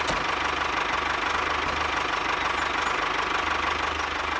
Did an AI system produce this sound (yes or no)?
no